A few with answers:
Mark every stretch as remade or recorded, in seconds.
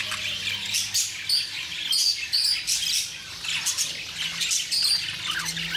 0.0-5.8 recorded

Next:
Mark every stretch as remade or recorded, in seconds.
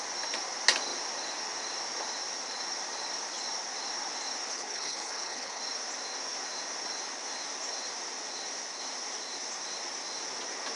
0.0-4.5 recorded; 4.5-5.6 remade; 5.6-10.8 recorded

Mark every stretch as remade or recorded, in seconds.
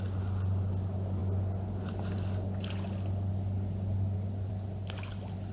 0.0-5.5 recorded